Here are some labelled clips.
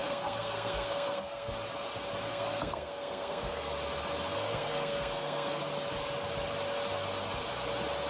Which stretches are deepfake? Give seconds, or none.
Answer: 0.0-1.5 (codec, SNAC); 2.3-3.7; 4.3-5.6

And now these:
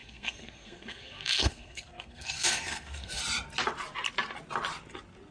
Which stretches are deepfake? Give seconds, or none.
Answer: 0.0-3.2 (codec, SNAC)

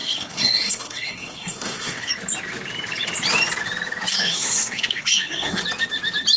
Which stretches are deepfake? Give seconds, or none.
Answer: 0.0-2.1 (codec, SNAC); 4.1-5.6

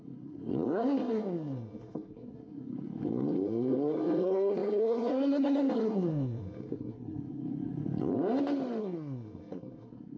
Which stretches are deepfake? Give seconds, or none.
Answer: 0.0-8.1 (codec, SNAC); 8.8-10.2

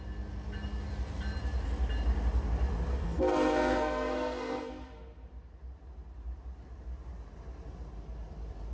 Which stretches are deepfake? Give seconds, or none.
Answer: 2.9-4.7 (codec, SNAC)

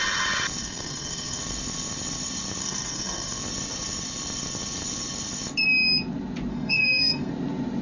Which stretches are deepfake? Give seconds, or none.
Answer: 0.6-1.4 (codec, SNAC); 2.6-3.4; 6.5-7.3

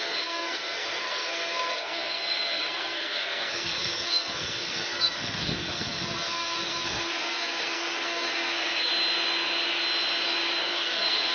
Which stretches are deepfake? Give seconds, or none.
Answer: 0.0-8.9 (codec, SNAC); 10.6-11.3

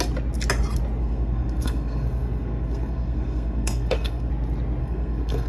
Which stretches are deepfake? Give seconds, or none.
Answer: 1.0-4.3 (codec, SNAC); 4.8-5.5